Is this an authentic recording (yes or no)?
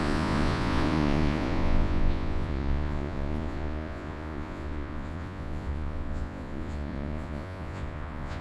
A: no